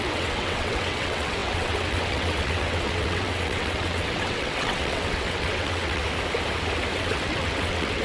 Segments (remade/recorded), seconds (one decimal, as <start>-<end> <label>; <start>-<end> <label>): 0.0-6.0 remade; 6.0-7.0 recorded; 7.0-8.0 remade